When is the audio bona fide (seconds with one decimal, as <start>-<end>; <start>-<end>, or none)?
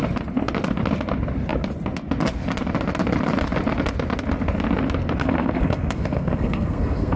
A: 0.0-5.2